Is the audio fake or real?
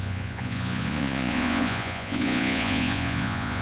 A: fake